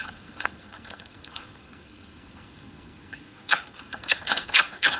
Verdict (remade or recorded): remade